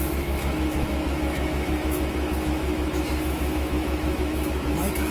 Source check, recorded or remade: remade